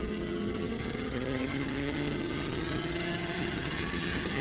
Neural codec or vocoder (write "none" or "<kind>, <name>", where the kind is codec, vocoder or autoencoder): vocoder, HiFi-GAN